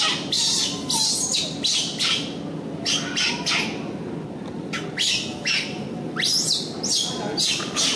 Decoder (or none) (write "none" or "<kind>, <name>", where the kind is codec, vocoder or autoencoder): none